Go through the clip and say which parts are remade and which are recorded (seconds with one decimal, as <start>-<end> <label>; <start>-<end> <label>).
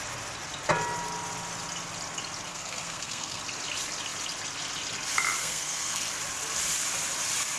0.0-2.5 recorded; 2.5-3.4 remade; 3.4-5.4 recorded; 5.4-6.1 remade; 6.1-7.6 recorded